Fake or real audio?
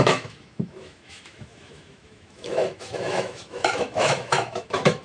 fake